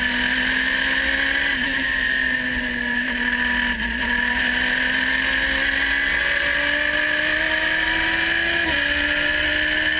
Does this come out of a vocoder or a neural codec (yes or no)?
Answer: no